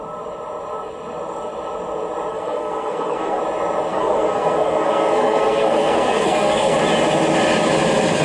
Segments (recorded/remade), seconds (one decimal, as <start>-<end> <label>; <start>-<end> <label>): 0.0-2.3 recorded; 2.3-3.4 remade; 3.4-3.9 recorded; 3.9-6.8 remade; 6.8-8.2 recorded